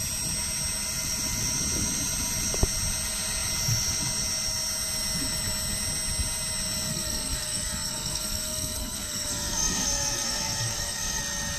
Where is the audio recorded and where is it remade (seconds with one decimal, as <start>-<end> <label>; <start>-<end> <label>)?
0.0-6.9 recorded; 6.9-11.2 remade; 11.2-11.6 recorded